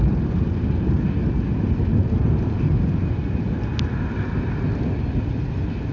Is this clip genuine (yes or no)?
yes